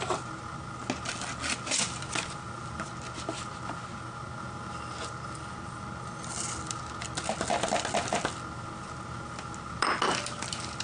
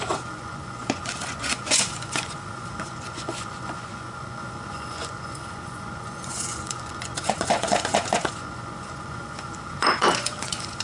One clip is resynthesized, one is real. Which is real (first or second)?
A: first